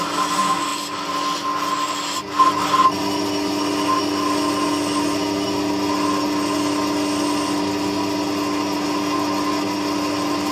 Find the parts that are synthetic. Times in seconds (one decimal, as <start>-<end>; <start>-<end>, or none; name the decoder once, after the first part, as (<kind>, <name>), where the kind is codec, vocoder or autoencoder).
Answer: none